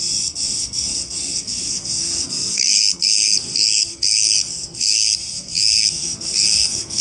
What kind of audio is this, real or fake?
fake